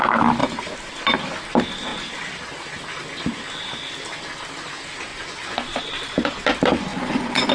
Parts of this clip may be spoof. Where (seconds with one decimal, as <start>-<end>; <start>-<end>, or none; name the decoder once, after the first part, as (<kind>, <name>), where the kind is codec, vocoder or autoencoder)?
5.1-5.9 (vocoder, Vocos); 6.9-7.5